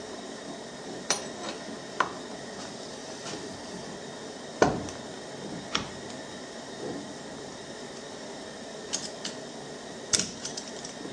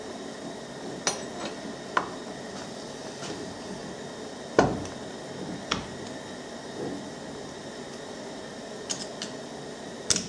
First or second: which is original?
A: second